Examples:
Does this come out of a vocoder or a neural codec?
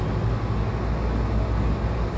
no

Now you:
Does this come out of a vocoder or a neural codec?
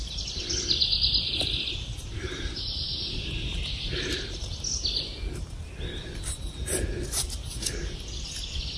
no